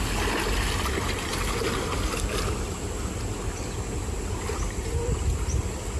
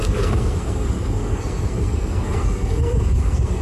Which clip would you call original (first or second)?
first